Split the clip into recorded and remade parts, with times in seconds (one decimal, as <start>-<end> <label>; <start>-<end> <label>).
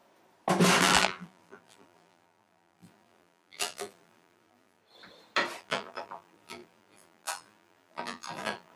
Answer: 0.0-0.8 recorded; 0.8-4.8 remade; 4.8-5.6 recorded; 5.6-8.8 remade